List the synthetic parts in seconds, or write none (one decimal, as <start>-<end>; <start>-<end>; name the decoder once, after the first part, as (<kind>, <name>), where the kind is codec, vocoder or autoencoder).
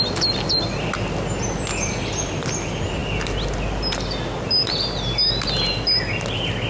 none